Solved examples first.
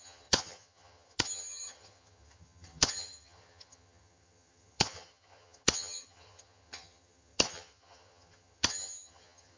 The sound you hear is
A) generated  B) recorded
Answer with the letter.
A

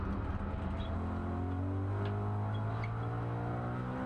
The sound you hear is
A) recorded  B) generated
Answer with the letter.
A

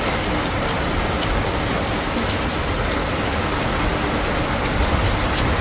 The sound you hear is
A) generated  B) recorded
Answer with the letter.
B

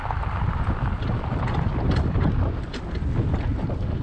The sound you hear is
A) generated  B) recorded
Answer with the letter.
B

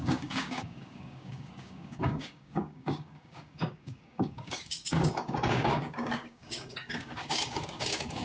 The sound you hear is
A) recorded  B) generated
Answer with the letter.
B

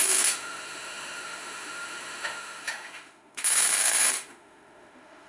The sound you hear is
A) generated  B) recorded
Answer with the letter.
A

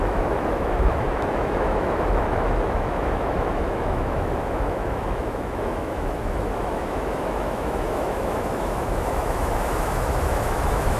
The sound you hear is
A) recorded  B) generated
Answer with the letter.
B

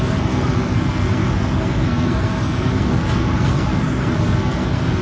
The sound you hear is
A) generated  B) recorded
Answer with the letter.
A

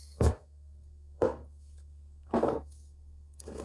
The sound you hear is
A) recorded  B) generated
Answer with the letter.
B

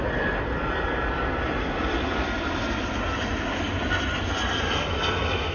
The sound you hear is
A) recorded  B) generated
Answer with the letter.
A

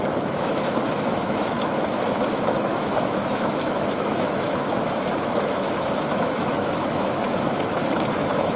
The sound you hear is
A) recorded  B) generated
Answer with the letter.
B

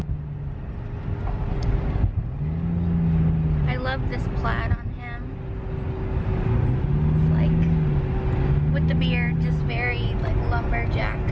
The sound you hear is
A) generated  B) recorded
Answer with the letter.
B